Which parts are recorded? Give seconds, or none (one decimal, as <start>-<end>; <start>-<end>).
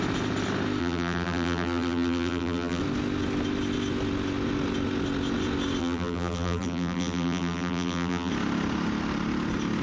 0.0-0.8; 2.8-5.8; 8.3-9.8